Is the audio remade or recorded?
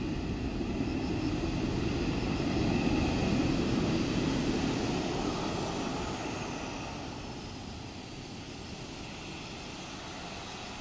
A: recorded